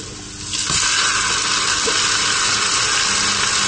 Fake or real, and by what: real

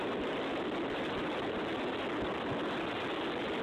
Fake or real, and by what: real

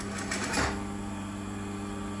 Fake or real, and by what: real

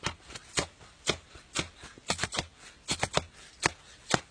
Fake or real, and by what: real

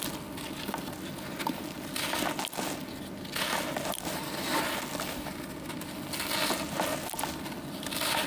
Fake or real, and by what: real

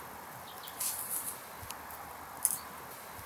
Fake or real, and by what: real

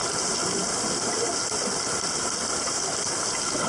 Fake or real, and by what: real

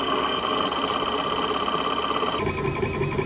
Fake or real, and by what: real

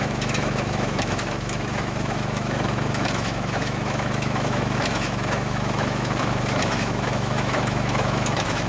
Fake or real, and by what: fake, autoencoder, DAC-VAE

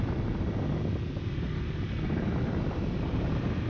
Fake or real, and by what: real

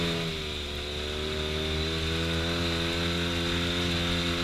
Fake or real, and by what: real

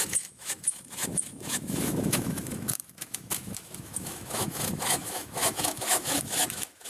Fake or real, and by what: fake, autoencoder, DAC-VAE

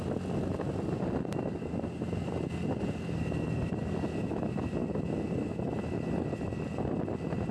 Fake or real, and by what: real